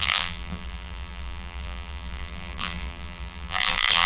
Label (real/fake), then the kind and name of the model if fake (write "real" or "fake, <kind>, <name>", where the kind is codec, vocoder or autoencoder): fake, vocoder, BigVGAN v2